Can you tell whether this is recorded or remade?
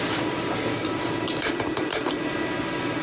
recorded